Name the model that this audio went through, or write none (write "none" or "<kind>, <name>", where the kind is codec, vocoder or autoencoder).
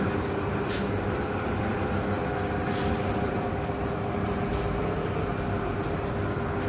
none